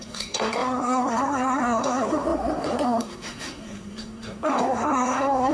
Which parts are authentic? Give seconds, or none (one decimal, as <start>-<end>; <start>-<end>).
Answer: none